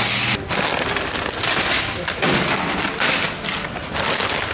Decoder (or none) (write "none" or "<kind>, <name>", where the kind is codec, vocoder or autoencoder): none